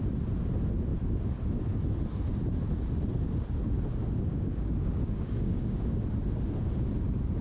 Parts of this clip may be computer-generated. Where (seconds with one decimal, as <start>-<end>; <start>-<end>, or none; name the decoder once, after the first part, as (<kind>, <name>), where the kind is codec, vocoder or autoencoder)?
4.0-6.0 (codec, DAC)